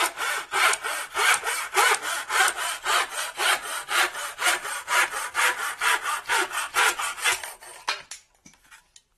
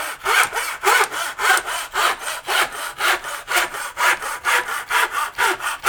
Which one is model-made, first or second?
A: first